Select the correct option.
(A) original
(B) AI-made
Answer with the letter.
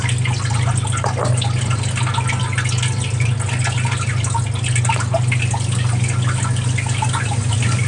A